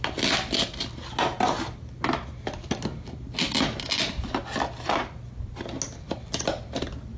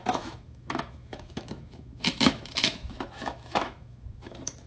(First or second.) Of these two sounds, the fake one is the second